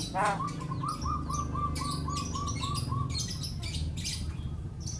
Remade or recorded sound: recorded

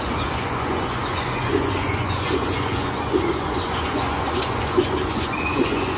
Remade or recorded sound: remade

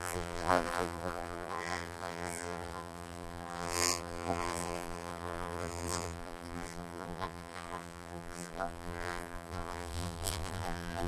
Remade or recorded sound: remade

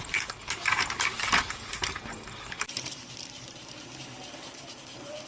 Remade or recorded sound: remade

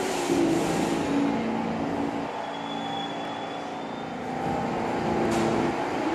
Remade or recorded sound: recorded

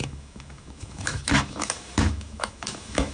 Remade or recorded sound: remade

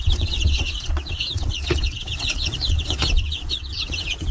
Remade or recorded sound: remade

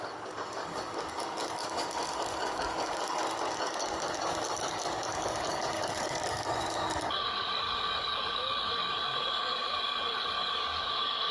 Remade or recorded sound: remade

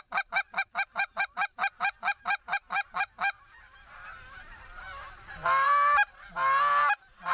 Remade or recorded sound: remade